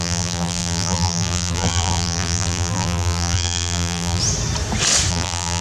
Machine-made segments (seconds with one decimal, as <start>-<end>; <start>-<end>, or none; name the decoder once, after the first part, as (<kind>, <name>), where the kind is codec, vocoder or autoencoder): 0.0-4.2 (vocoder, BigVGAN v2); 5.1-5.6